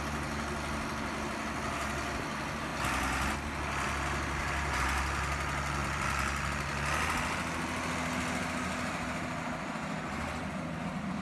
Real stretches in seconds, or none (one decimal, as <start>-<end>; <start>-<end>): 0.0-5.8; 6.5-11.2